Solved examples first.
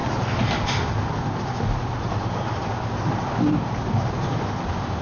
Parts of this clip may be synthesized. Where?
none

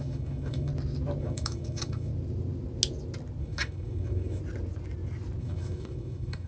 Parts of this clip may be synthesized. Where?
0.0-0.7 (autoencoder, DAC-VAE); 1.2-2.1; 3.4-4.4; 5.4-6.5

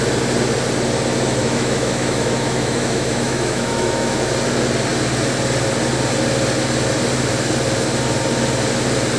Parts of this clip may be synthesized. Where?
1.4-4.3 (autoencoder, DAC-VAE)

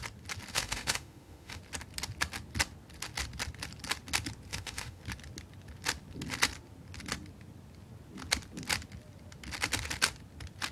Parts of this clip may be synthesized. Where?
0.5-1.6 (autoencoder, DAC-VAE); 4.5-5.0